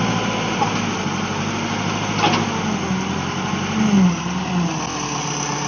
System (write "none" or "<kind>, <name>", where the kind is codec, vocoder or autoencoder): none